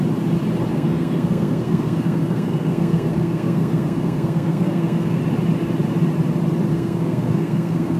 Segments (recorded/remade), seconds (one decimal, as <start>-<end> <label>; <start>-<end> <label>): 0.0-0.7 recorded; 0.7-5.2 remade; 5.2-6.7 recorded; 6.7-8.0 remade